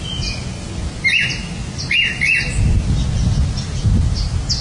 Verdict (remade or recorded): recorded